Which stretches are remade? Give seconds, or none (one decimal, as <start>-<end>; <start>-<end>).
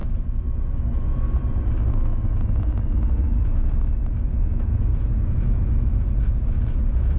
4.3-7.2